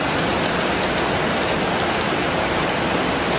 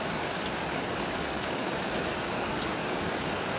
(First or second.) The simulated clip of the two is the second